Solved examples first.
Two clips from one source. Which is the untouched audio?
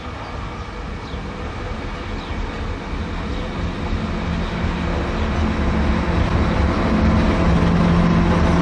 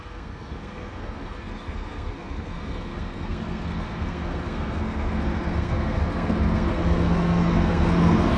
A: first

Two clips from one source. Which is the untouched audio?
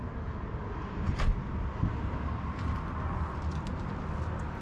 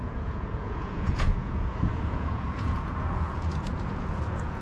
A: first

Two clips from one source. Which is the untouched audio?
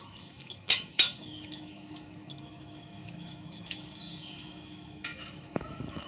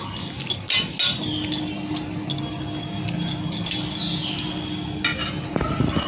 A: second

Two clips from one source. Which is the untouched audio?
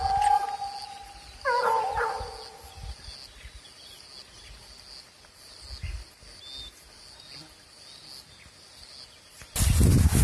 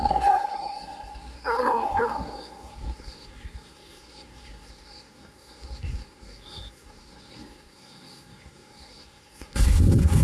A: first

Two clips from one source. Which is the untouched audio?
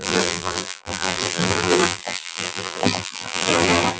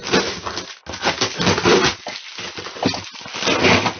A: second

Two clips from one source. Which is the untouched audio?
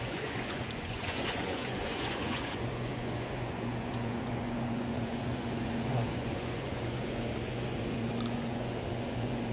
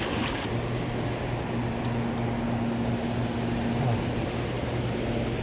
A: second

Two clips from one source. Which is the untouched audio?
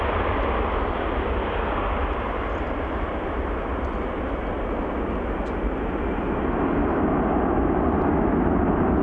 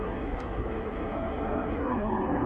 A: first